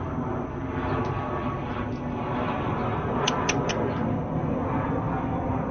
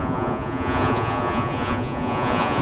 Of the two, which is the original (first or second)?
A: first